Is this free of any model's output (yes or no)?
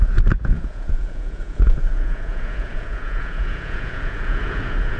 no